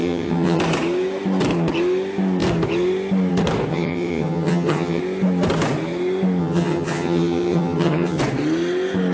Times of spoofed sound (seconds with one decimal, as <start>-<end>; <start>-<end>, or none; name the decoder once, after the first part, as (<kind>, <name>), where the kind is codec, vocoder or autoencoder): 0.0-0.6 (vocoder, HiFi-GAN); 3.7-5.0; 6.4-8.2